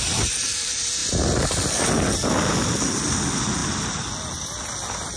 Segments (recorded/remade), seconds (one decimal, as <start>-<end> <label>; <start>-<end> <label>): 0.0-5.2 recorded